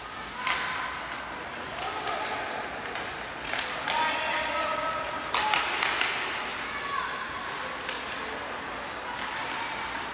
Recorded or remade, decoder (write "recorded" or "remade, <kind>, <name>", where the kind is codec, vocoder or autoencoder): recorded